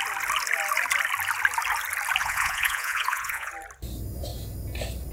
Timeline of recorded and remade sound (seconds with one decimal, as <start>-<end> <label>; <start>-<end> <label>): 0.0-2.2 recorded; 2.2-3.5 remade; 3.5-5.1 recorded